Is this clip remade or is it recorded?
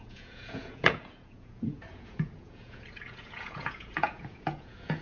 remade